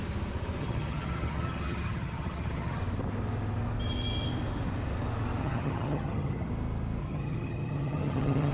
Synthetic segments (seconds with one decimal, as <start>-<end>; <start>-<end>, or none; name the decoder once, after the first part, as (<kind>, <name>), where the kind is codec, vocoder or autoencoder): 0.6-2.8 (vocoder, HiFi-GAN); 5.4-6.5; 7.0-8.5